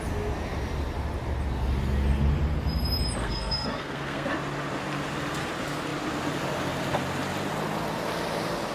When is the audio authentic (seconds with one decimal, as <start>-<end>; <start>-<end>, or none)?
0.0-3.2; 4.3-8.7